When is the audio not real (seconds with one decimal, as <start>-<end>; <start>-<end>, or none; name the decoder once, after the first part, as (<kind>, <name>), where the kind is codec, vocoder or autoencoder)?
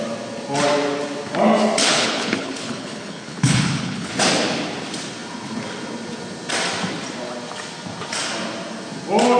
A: 1.8-4.1 (codec, HILCodec)